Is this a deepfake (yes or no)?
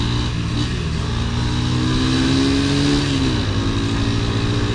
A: no